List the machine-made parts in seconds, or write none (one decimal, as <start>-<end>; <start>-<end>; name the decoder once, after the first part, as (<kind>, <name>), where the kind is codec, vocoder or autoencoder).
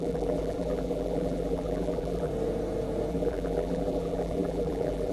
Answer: 0.0-2.3 (vocoder, BigVGAN v2); 3.1-5.1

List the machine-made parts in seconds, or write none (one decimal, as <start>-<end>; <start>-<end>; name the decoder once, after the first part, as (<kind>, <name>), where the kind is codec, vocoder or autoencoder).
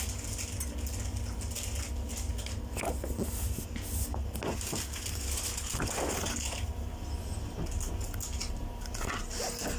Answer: 8.4-9.1 (vocoder, BigVGAN v2)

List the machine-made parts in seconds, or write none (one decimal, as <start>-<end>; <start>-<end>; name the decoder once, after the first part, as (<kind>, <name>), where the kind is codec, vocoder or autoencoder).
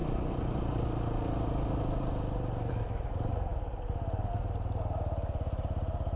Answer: none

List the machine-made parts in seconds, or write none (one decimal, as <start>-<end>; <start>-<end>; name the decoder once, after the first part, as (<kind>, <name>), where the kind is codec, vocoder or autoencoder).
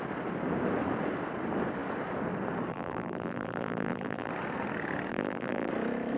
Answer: 2.7-4.3 (vocoder, BigVGAN v2); 5.1-5.7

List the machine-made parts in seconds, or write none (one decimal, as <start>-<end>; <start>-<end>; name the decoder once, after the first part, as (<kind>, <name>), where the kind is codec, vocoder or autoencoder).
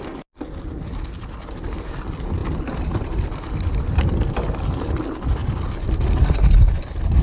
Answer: 2.4-4.6 (vocoder, BigVGAN v2); 5.4-6.8